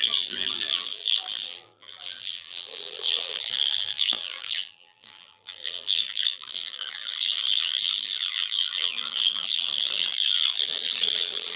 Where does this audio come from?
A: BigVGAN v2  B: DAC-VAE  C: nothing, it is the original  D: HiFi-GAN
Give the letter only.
A